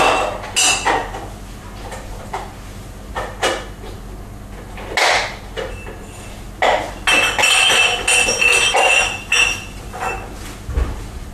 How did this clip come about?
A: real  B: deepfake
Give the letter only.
A